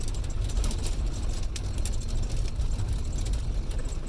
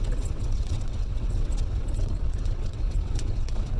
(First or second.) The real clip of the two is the first